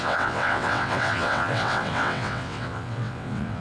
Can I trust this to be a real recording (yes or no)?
no